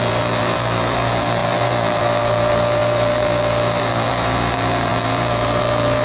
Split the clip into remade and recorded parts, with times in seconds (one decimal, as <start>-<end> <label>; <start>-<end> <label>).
0.0-6.0 remade